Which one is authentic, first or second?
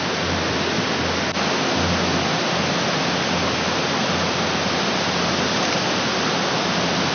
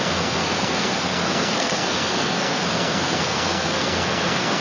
first